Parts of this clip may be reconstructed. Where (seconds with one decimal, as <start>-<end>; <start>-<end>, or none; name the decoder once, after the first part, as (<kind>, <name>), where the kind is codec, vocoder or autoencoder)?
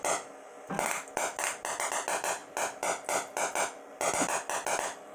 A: none